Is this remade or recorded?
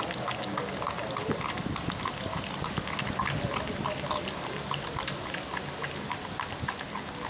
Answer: recorded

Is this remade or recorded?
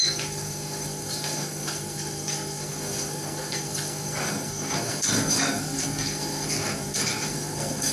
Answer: remade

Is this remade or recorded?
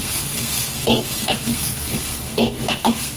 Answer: remade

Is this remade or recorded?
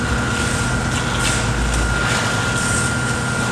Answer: recorded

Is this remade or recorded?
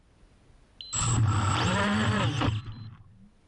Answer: recorded